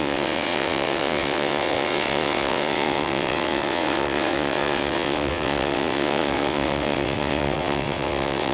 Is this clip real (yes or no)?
no